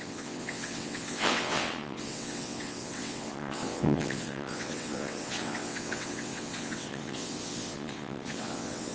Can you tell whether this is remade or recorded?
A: remade